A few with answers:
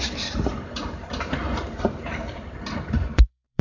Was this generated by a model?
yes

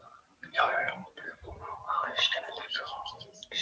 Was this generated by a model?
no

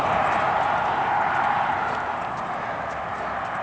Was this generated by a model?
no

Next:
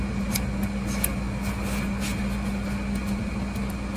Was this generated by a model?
no